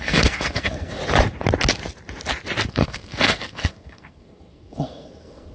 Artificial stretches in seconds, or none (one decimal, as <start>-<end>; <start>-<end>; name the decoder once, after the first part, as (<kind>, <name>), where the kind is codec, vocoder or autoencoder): 0.0-1.0 (codec, SNAC); 2.7-5.5